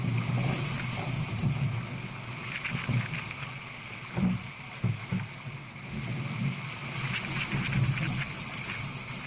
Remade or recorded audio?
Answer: recorded